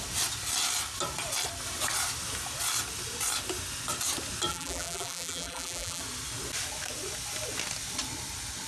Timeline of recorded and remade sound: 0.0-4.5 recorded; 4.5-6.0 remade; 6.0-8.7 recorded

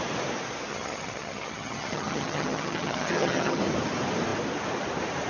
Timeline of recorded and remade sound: 0.0-0.7 recorded; 0.7-3.6 remade; 3.6-5.3 recorded

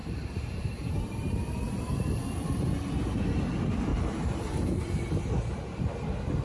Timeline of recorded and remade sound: 0.0-1.9 remade; 1.9-3.9 recorded; 3.9-5.3 remade; 5.3-6.4 recorded

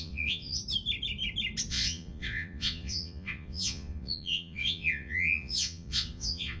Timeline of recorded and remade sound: 0.0-0.6 remade; 0.6-1.7 recorded; 1.7-6.6 remade